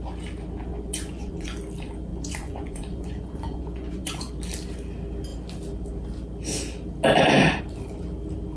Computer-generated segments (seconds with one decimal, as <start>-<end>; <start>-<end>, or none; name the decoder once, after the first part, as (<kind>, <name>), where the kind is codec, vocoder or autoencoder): 0.7-1.6 (vocoder, Vocos); 2.1-4.3